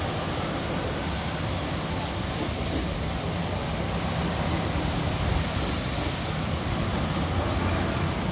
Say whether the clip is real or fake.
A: real